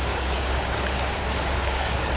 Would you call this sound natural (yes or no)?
no